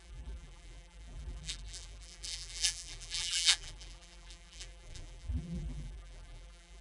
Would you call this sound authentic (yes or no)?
no